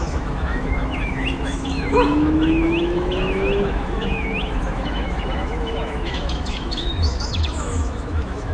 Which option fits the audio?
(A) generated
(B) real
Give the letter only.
A